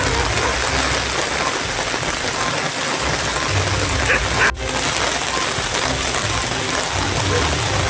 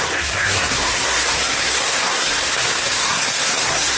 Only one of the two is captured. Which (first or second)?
first